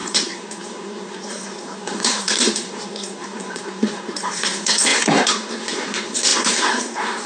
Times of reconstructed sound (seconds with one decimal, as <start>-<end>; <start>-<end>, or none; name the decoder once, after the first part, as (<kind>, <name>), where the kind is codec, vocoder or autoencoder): 0.0-7.3 (codec, SNAC)